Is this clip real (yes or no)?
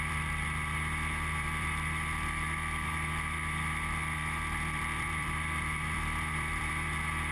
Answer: no